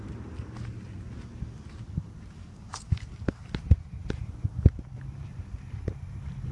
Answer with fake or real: fake